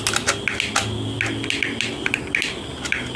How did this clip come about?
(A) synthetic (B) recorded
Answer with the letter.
B